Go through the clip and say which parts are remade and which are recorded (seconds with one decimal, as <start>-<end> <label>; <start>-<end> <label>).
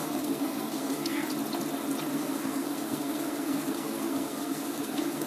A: 0.0-1.3 remade; 1.3-2.1 recorded; 2.1-5.3 remade